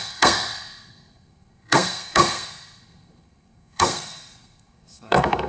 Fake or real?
fake